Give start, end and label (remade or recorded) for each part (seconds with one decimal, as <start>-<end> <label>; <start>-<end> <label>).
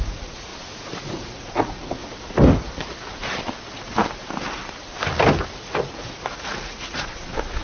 0.0-0.5 remade; 0.5-1.0 recorded; 1.0-2.0 remade; 2.0-5.8 recorded; 5.8-7.6 remade